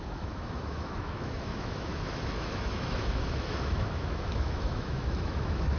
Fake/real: fake